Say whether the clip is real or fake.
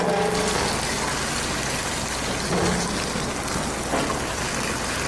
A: real